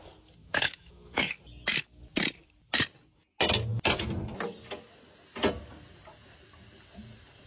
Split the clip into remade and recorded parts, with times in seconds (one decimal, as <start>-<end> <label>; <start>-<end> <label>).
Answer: 0.0-0.4 recorded; 0.4-1.4 remade; 1.4-7.5 recorded